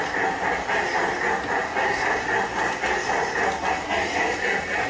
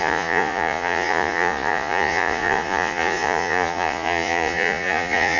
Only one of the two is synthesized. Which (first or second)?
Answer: second